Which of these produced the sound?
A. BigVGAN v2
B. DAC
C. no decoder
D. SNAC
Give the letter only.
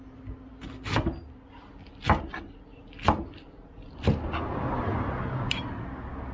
C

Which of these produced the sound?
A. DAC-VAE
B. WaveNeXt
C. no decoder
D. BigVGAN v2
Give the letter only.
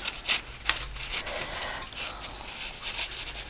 C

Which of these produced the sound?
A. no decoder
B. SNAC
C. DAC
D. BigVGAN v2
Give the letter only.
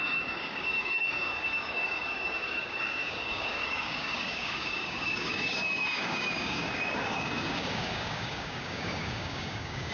C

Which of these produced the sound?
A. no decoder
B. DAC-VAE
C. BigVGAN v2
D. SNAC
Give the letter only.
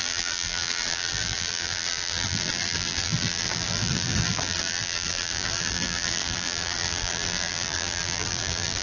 C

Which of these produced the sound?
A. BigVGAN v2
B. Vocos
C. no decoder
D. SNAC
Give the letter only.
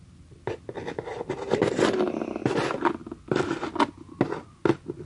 C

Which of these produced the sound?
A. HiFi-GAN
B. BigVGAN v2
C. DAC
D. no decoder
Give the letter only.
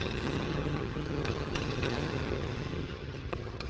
A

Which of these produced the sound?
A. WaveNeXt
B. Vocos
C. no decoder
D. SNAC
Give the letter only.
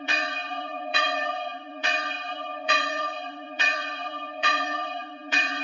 B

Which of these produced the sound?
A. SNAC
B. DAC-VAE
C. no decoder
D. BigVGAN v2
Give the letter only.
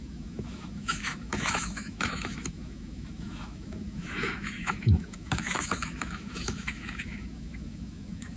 B